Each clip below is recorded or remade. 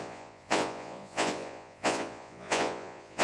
remade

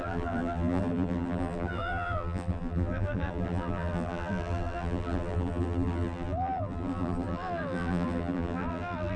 remade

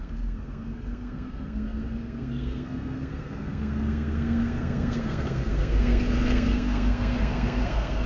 remade